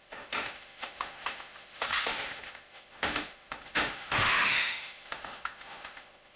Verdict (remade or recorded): remade